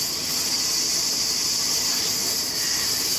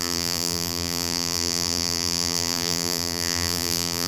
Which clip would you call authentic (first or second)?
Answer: first